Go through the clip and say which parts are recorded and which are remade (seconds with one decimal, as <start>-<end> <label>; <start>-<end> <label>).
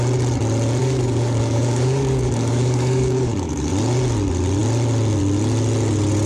0.0-0.8 recorded; 0.8-3.7 remade; 3.7-6.3 recorded